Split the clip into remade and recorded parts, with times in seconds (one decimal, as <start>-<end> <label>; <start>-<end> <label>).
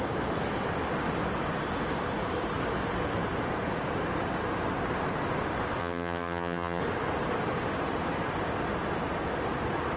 0.0-5.8 recorded; 5.8-6.8 remade; 6.8-10.0 recorded